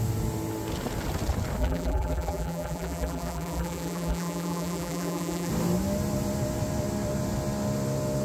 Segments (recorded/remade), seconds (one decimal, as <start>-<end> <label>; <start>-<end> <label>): 0.0-1.6 recorded; 1.6-5.5 remade; 5.5-8.2 recorded